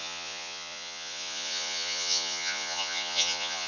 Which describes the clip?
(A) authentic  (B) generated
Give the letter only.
B